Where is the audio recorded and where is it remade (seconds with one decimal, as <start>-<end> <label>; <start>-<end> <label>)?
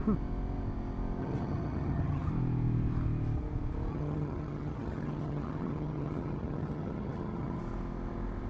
0.0-1.2 recorded; 1.2-2.3 remade; 2.3-3.9 recorded; 3.9-7.6 remade; 7.6-8.5 recorded